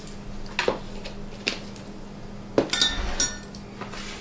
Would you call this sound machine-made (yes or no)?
no